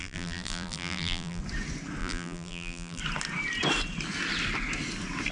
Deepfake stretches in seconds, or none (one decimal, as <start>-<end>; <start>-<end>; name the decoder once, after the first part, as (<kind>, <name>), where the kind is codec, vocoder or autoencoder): 0.0-1.4 (vocoder, BigVGAN v2); 2.0-3.0